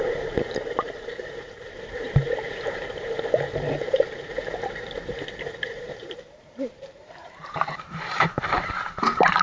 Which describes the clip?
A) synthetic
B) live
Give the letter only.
A